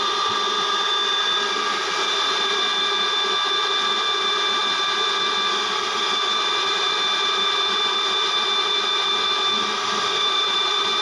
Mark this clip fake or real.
fake